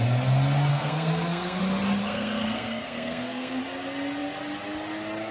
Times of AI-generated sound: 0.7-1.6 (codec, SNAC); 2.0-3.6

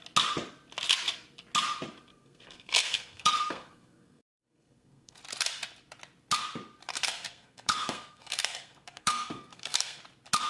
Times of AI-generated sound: 2.1-5.2 (codec, SNAC); 6.9-10.0

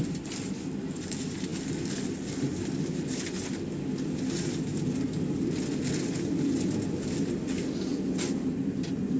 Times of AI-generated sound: none